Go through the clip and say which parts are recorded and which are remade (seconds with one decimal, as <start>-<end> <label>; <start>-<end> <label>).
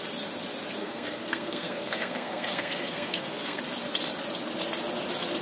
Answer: 0.0-0.8 recorded; 0.8-3.6 remade; 3.6-5.4 recorded